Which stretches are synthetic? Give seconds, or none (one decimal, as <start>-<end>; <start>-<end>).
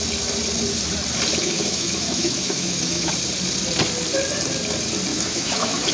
1.4-3.1; 5.1-5.9